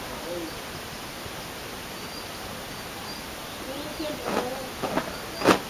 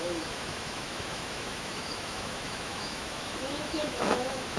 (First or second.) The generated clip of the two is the second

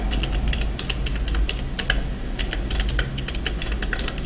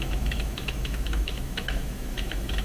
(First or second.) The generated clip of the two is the second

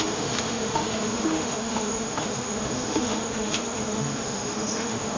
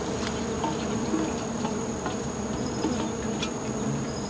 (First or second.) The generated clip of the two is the first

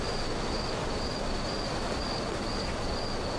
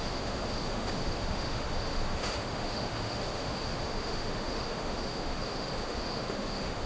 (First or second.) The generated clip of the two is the second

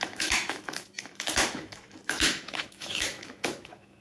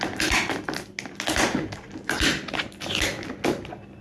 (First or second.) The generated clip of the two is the first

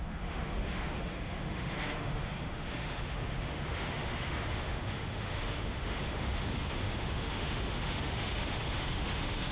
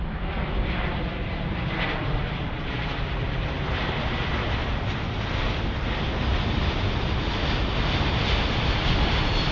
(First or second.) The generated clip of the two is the first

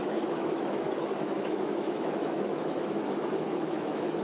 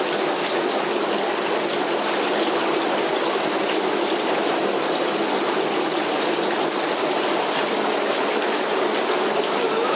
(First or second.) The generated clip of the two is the first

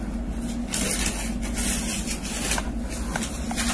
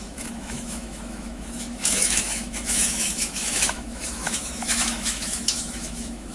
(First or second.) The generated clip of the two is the second